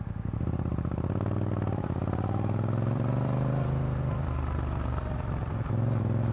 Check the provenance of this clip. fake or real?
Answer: fake